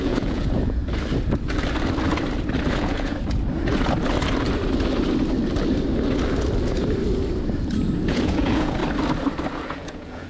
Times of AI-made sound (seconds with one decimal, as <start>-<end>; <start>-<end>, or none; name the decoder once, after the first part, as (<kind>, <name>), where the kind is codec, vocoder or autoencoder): 0.0-0.8 (vocoder, Vocos); 2.7-3.1; 8.1-8.8; 9.5-10.3